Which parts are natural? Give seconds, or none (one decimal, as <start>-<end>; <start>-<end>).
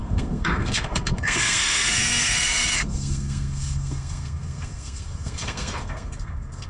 none